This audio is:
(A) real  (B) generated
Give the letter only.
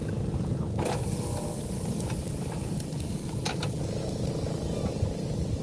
A